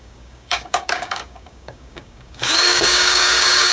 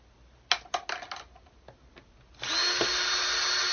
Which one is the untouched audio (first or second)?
second